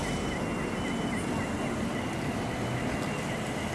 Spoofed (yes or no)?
no